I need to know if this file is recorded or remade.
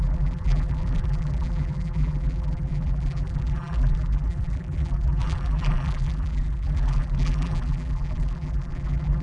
remade